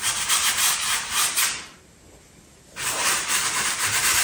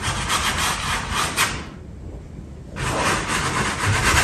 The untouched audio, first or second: second